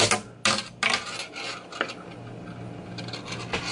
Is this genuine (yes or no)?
yes